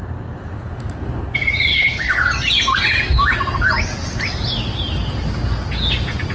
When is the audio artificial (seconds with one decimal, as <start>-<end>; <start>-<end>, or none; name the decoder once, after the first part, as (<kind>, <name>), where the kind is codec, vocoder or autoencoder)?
1.7-2.2 (codec, HILCodec)